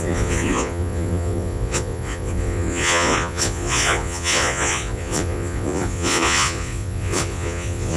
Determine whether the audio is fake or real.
fake